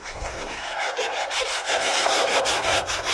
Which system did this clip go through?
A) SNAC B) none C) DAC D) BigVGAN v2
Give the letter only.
A